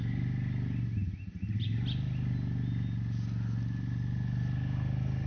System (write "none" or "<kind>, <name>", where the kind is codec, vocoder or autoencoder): none